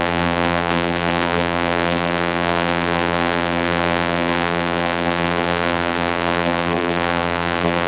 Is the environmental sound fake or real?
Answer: fake